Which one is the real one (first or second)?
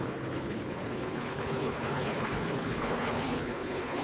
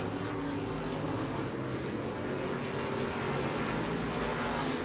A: second